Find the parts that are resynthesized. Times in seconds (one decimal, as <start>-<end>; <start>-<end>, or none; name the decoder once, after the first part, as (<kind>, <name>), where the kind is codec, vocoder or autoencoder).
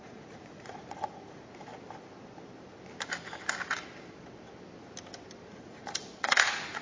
0.0-1.7 (vocoder, Vocos); 5.5-6.8